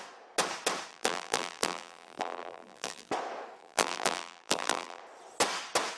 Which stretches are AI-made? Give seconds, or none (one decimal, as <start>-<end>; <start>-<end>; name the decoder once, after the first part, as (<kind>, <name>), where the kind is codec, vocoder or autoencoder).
0.9-3.1 (vocoder, BigVGAN v2); 3.6-5.0